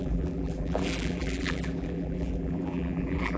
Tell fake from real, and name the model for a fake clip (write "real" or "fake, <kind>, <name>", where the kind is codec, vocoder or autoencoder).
fake, vocoder, BigVGAN v2